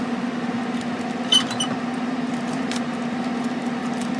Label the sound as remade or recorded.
recorded